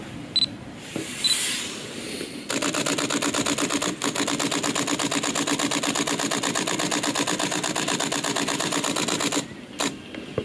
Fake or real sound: real